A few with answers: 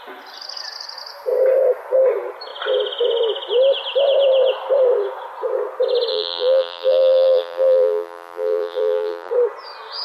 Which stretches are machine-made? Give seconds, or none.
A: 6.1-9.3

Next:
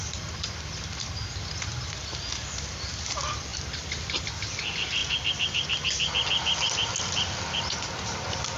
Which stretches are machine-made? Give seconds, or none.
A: 3.5-4.3

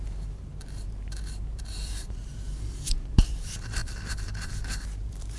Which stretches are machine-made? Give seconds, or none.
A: 0.0-5.4

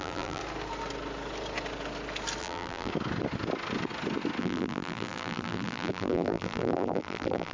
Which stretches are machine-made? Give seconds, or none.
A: 0.0-0.4; 2.4-2.9; 4.4-7.5

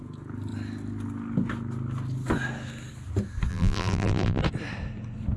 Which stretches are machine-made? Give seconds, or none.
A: 3.5-4.4

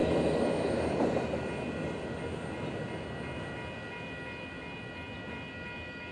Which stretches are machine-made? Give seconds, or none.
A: none

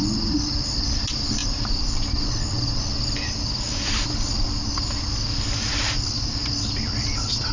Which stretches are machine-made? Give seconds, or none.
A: none

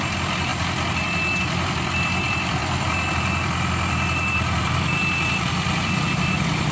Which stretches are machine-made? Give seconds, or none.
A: 0.0-0.5; 1.4-2.6; 3.1-6.7